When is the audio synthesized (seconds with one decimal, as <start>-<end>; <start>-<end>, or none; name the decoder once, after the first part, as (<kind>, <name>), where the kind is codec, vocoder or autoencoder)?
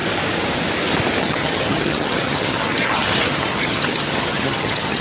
1.2-5.0 (vocoder, HiFi-GAN)